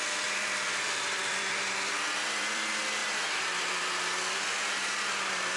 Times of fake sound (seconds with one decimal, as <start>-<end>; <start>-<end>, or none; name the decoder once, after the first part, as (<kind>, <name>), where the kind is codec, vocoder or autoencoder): 0.0-5.6 (vocoder, BigVGAN v2)